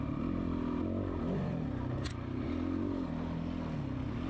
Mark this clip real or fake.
real